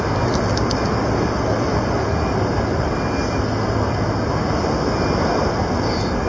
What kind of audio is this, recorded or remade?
recorded